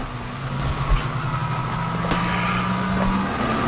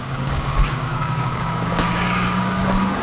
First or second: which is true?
first